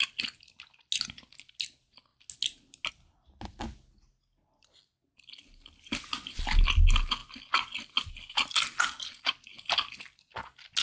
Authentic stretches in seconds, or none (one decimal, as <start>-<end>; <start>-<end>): 0.0-10.8